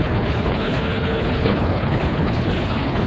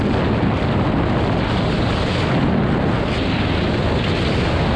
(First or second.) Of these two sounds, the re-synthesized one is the first